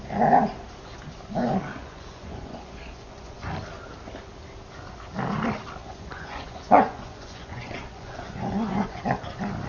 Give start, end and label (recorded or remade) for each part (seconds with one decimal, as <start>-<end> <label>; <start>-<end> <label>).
0.0-1.7 recorded; 1.7-3.5 remade; 3.5-5.8 recorded; 5.8-9.0 remade; 9.0-9.7 recorded